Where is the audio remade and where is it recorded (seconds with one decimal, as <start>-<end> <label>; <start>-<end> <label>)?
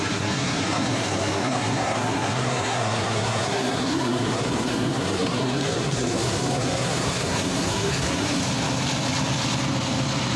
0.0-8.4 remade; 8.4-10.4 recorded